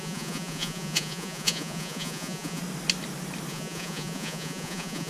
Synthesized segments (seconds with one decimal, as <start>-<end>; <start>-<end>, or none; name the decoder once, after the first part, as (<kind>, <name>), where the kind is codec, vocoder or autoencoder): 0.0-2.6 (vocoder, Vocos); 3.5-5.1